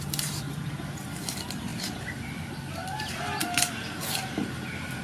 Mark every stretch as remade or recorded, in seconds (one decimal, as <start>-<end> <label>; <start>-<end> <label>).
0.0-5.0 recorded